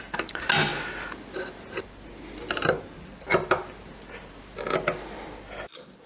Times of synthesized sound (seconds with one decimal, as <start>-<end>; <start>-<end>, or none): none